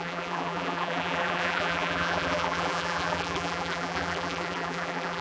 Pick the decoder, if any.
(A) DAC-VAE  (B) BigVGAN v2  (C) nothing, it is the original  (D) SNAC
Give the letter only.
B